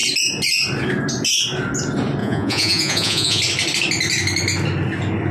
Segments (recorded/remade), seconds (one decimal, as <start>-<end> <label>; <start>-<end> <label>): 0.0-2.2 recorded; 2.2-3.4 remade; 3.4-5.3 recorded